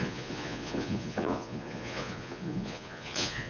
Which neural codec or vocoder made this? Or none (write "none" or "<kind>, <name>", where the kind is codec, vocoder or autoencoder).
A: vocoder, Vocos